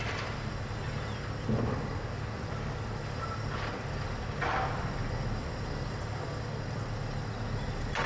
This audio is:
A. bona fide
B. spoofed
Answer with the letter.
A